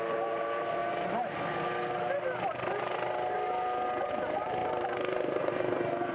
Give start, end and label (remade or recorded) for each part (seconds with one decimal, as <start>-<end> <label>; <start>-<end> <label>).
0.0-0.8 remade; 0.8-4.1 recorded; 4.1-6.1 remade